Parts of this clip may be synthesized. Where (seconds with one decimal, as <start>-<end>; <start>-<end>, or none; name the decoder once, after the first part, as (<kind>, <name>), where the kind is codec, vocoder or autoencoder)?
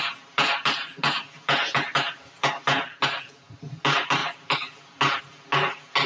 none